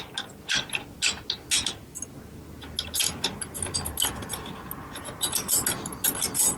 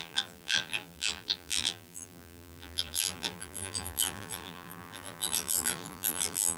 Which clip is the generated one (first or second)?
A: second